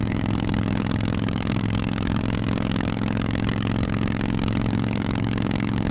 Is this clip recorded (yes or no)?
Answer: no